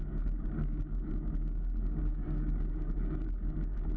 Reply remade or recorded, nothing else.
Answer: remade